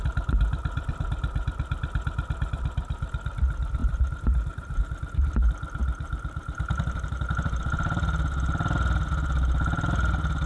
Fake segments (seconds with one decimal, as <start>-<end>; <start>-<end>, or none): 3.8-4.8; 5.8-7.6